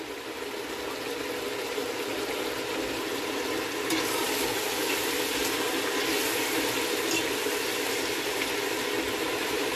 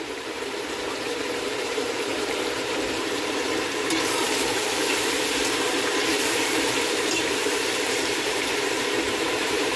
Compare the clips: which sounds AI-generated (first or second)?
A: second